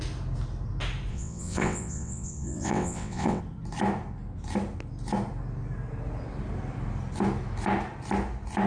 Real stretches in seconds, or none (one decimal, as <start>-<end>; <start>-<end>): 0.0-1.1; 3.4-8.7